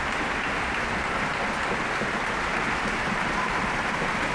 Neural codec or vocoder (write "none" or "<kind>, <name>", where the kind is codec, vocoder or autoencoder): none